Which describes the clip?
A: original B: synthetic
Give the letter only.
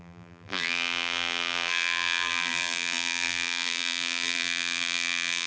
B